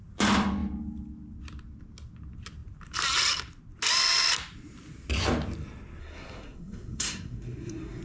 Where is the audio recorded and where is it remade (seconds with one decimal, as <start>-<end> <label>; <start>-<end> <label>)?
0.0-6.0 recorded; 6.0-8.0 remade

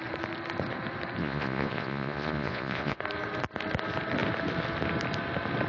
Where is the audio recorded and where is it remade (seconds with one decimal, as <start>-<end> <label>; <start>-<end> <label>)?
0.0-1.2 recorded; 1.2-3.0 remade; 3.0-5.7 recorded

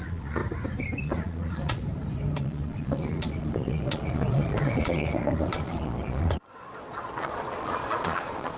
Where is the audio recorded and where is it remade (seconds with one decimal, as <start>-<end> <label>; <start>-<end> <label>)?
0.0-0.4 remade; 0.4-1.0 recorded; 1.0-1.8 remade; 1.8-2.4 recorded; 2.4-8.6 remade